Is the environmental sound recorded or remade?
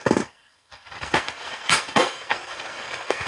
remade